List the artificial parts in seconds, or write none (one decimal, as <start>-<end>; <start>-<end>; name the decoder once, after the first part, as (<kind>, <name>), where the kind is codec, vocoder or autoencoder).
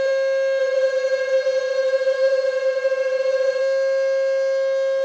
0.6-3.6 (vocoder, Vocos)